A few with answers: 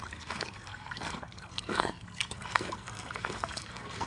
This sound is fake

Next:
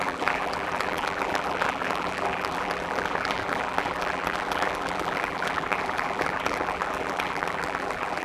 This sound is fake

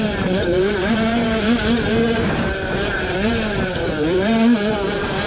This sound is fake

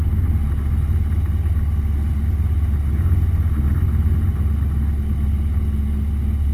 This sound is real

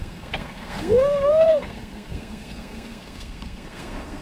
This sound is fake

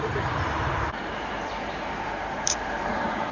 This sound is fake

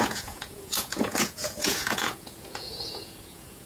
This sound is fake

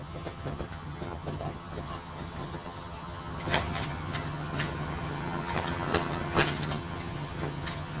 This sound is fake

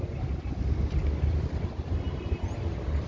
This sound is real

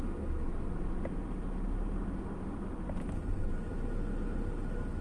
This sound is real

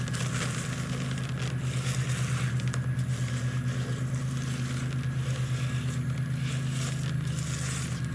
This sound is real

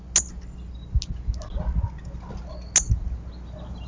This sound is real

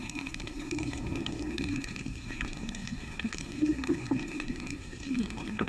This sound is fake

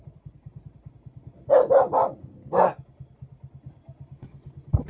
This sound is real